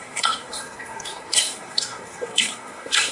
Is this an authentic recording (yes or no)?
no